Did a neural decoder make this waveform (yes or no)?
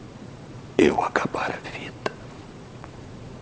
yes